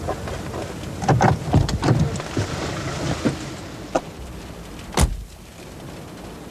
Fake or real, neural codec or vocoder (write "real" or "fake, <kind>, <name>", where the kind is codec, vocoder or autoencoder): real